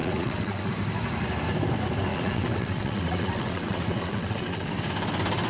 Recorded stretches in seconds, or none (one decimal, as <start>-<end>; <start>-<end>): 0.7-2.1; 4.7-5.5